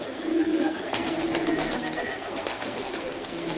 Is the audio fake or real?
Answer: fake